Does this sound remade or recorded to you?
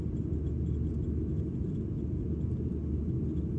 recorded